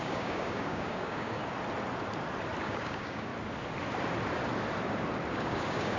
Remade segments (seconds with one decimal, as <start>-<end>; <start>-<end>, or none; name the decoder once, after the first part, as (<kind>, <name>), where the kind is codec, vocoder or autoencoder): 0.0-1.4 (codec, DAC); 2.6-3.3; 5.3-6.0

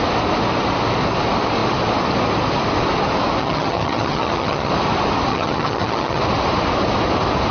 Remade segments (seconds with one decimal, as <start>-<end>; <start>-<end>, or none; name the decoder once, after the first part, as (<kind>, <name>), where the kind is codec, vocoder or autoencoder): 3.4-4.7 (vocoder, HiFi-GAN); 5.3-6.2